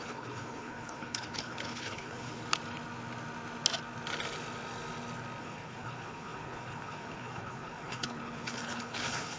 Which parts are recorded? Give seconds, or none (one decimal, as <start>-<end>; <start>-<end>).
2.4-5.4